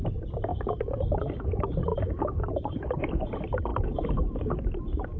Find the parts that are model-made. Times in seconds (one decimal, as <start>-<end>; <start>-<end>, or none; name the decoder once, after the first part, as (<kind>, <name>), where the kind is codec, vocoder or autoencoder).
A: none